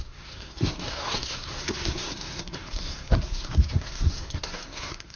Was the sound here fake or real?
fake